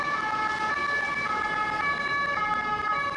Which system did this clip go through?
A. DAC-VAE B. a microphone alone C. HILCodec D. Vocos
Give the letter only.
B